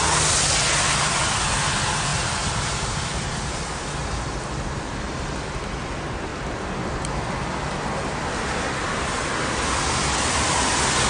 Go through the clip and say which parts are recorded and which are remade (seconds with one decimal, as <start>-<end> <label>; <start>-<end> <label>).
0.0-2.1 recorded; 2.1-3.6 remade; 3.6-6.3 recorded; 6.3-8.8 remade; 8.8-11.1 recorded